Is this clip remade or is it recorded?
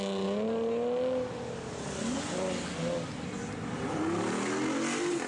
recorded